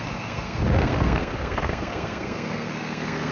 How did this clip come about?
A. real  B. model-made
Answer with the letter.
B